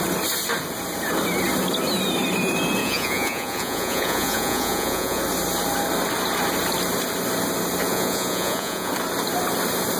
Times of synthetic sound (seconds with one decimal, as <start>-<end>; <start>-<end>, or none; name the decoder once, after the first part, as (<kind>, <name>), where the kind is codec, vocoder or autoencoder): 2.8-5.2 (vocoder, Vocos); 7.9-8.9